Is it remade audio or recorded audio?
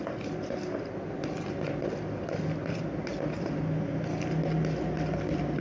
recorded